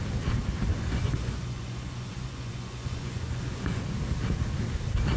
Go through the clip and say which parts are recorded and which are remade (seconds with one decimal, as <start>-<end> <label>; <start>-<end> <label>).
0.0-0.7 recorded; 0.7-3.8 remade; 3.8-5.2 recorded